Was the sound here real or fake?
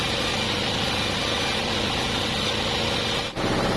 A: real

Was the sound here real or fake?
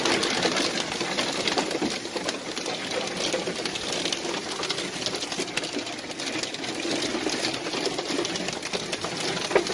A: real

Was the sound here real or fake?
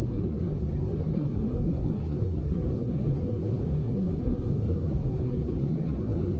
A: fake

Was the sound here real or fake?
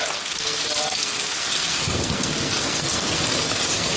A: fake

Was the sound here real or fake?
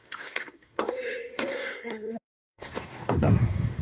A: fake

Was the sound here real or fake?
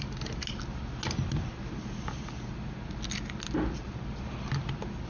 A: real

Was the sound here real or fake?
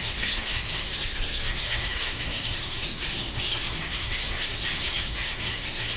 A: fake